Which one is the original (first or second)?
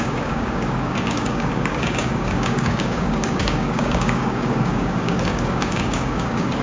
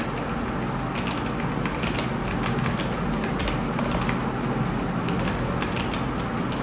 second